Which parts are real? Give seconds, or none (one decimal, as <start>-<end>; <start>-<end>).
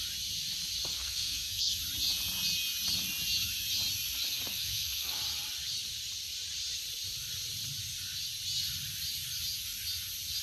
0.0-0.9; 1.8-4.5; 5.2-10.4